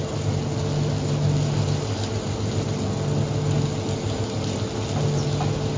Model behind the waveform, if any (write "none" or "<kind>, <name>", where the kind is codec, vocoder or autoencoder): none